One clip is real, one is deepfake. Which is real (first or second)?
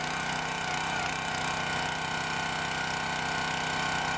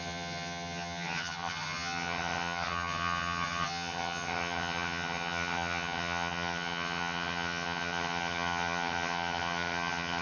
first